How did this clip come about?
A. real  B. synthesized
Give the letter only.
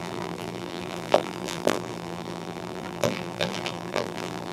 B